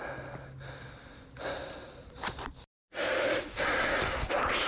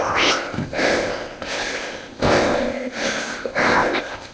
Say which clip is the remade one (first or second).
second